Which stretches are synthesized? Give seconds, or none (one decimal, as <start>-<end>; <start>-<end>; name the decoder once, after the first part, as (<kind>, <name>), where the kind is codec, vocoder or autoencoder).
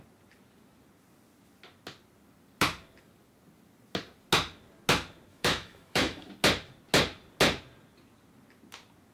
5.3-6.3 (autoencoder, DAC-VAE)